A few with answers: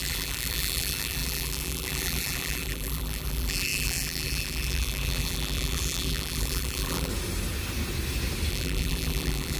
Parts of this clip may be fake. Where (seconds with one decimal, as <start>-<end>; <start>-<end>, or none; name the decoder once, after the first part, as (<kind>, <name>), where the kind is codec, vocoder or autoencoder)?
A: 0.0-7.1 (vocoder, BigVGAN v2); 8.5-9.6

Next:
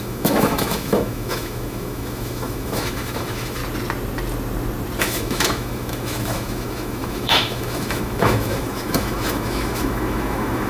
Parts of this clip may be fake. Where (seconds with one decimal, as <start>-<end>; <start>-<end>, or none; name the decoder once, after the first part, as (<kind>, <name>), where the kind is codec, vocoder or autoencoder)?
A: 0.0-3.6 (autoencoder, DAC-VAE); 5.0-10.7

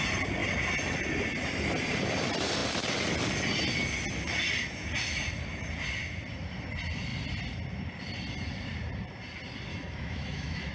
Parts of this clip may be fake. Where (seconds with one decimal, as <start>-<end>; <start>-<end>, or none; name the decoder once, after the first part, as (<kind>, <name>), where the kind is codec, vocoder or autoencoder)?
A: 9.7-10.7 (autoencoder, DAC-VAE)

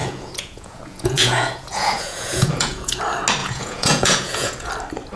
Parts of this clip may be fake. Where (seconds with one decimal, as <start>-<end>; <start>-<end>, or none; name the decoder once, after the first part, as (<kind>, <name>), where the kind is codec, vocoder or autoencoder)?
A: 0.0-3.0 (vocoder, Vocos); 3.4-4.7

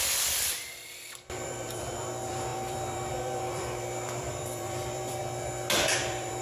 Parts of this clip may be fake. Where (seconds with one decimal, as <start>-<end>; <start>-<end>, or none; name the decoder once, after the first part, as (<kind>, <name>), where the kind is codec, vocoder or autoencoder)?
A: 0.0-5.2 (vocoder, BigVGAN v2); 6.0-6.4

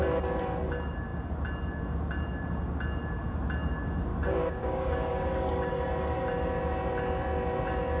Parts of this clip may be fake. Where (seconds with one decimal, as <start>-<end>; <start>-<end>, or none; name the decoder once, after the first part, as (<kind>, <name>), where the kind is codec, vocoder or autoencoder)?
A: 4.1-5.7 (codec, DAC)